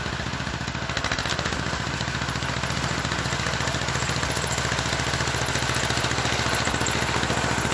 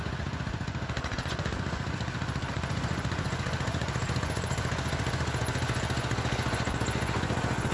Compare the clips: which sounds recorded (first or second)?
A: first